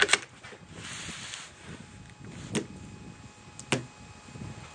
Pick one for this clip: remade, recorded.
recorded